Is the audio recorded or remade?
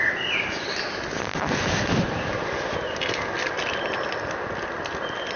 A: recorded